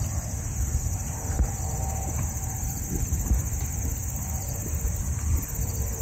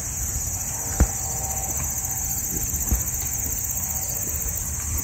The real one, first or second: second